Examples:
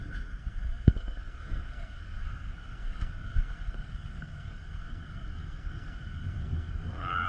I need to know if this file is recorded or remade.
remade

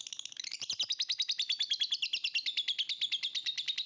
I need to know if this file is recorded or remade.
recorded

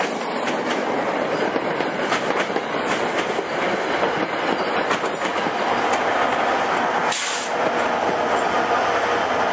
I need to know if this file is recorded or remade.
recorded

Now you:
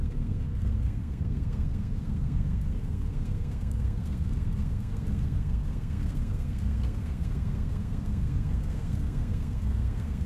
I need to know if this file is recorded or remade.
remade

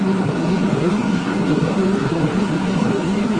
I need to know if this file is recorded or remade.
remade